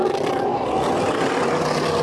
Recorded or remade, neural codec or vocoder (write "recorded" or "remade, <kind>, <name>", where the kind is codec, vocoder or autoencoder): recorded